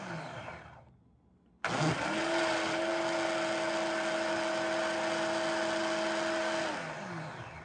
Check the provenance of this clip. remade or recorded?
recorded